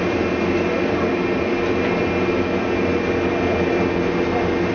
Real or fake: real